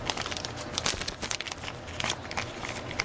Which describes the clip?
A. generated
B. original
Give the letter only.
B